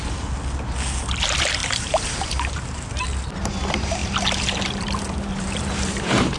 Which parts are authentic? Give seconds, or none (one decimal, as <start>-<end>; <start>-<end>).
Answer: 0.0-1.6; 2.9-4.0